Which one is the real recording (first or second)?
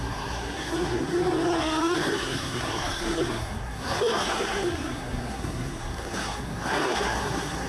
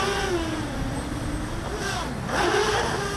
second